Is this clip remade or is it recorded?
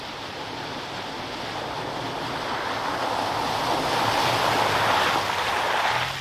recorded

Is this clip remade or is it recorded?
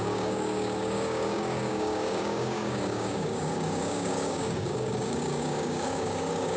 remade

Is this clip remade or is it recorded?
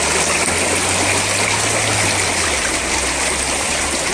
recorded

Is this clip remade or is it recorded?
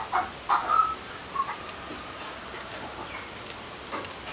recorded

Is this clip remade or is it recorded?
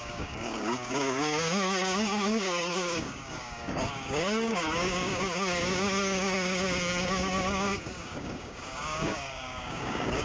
remade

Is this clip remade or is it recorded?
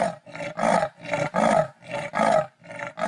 recorded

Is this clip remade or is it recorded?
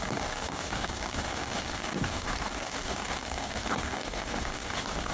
remade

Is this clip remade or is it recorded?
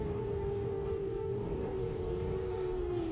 remade